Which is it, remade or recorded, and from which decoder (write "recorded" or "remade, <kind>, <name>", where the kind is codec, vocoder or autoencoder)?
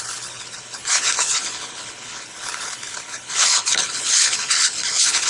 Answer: remade, codec, HILCodec